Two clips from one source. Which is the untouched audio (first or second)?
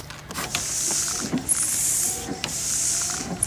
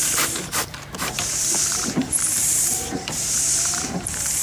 first